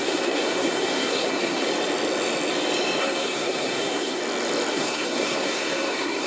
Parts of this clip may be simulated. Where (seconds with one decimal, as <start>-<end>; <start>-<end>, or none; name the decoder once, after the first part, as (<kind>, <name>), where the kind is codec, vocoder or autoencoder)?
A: 0.0-1.7 (codec, SNAC); 3.0-4.2; 4.7-6.3

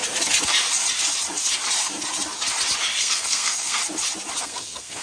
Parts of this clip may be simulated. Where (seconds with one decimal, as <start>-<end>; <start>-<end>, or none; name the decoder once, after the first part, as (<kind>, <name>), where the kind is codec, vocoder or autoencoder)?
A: 3.0-3.8 (codec, SNAC); 4.4-5.0